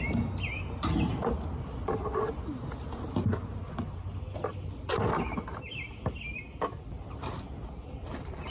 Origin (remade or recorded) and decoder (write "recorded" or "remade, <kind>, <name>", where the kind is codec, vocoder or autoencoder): recorded